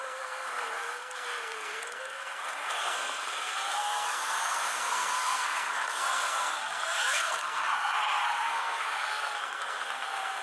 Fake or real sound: fake